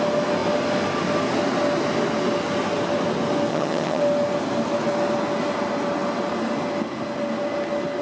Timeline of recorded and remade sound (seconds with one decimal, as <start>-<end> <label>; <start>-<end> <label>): 0.0-3.5 recorded; 3.5-4.0 remade; 4.0-8.0 recorded